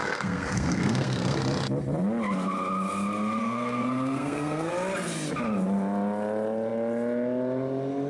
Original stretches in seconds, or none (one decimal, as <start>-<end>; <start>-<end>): 1.4-3.4; 4.7-8.1